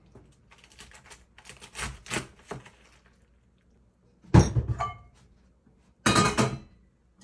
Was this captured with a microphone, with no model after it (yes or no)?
yes